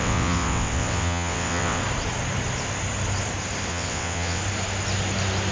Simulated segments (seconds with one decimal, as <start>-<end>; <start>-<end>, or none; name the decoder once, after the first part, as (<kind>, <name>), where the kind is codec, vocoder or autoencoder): 0.0-1.8 (vocoder, WaveNeXt); 3.7-4.4